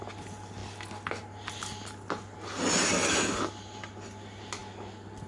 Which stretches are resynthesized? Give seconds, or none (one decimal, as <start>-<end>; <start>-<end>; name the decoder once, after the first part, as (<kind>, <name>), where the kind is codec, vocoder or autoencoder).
none